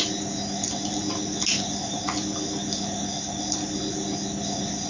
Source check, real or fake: real